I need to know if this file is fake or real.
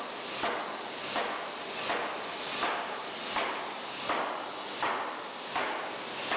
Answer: real